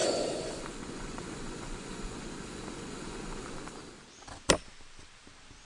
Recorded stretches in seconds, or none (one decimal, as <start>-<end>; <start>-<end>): 3.4-5.6

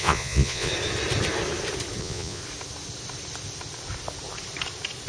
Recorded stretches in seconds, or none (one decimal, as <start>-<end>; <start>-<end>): 0.7-2.0; 2.4-5.1

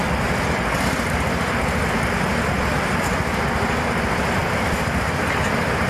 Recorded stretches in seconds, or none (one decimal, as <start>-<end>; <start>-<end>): 0.0-2.7; 4.4-5.2